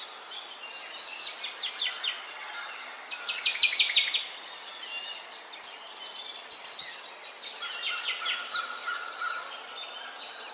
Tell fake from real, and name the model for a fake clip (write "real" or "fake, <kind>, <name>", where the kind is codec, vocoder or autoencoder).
real